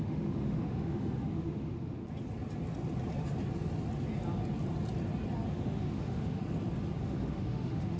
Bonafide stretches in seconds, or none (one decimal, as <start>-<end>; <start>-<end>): 2.0-5.5; 6.4-7.0

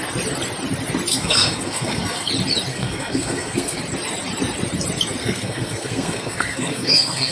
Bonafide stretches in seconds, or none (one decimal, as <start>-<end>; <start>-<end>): 0.0-1.1; 2.3-2.7; 3.8-5.2

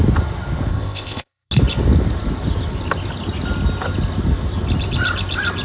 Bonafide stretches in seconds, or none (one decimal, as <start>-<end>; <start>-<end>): 0.0-0.7; 1.5-5.6

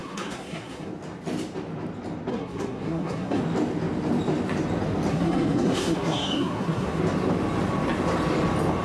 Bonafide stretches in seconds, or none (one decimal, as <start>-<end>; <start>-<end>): 0.9-2.3; 3.4-5.1; 7.0-8.8